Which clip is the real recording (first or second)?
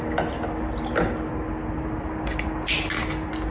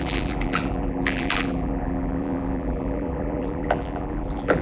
first